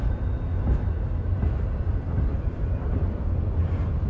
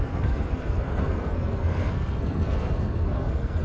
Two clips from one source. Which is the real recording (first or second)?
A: first